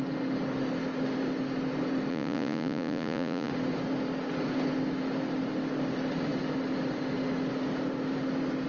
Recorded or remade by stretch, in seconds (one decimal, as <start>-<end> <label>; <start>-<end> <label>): 0.0-2.1 recorded; 2.1-3.5 remade; 3.5-8.7 recorded